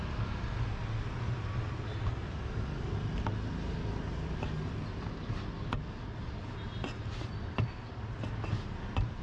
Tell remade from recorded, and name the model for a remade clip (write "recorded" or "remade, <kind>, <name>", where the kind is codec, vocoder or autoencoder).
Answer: recorded